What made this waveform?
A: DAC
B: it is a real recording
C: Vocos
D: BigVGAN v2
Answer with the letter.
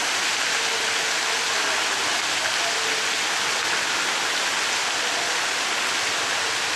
B